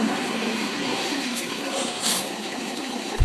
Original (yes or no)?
no